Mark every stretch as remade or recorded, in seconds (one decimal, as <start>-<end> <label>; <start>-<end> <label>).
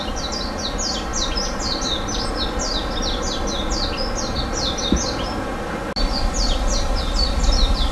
0.0-7.9 recorded